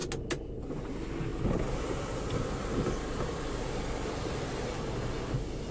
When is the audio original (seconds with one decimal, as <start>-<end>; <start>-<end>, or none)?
0.0-1.3; 4.7-5.7